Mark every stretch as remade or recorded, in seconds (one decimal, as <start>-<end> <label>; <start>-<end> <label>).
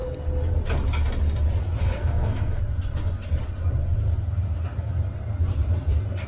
0.0-1.8 recorded; 1.8-2.6 remade; 2.6-6.3 recorded